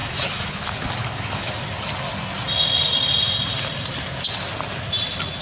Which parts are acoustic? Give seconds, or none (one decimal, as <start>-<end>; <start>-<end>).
0.6-1.0; 1.5-5.4